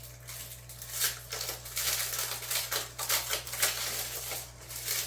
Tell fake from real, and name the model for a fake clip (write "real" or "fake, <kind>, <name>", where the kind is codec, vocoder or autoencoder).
real